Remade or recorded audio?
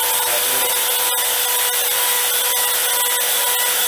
recorded